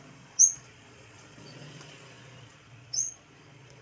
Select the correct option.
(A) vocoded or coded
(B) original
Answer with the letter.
A